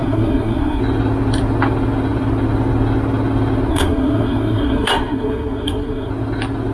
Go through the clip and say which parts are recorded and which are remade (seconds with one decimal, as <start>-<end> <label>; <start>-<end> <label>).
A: 0.0-0.8 remade; 0.8-3.7 recorded; 3.7-6.1 remade; 6.1-6.7 recorded